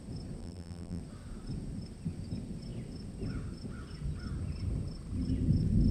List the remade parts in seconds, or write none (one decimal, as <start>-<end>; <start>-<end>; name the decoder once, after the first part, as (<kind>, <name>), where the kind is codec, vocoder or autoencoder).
0.4-1.0 (vocoder, BigVGAN v2)